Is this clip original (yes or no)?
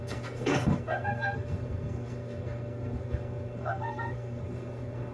no